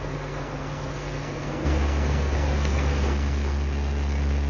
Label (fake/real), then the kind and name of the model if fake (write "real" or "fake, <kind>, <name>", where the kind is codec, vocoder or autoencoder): fake, codec, SNAC